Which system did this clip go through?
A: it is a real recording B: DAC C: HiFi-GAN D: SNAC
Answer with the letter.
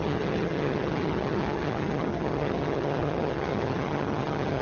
C